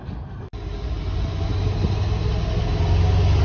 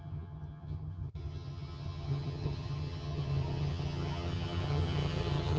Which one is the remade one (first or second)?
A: second